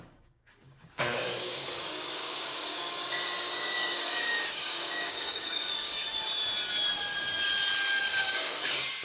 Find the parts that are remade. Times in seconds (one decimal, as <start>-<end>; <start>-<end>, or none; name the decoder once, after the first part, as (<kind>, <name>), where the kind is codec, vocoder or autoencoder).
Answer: 0.0-6.0 (codec, DAC); 8.0-9.0